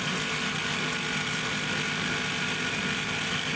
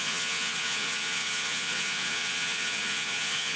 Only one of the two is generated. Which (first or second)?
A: second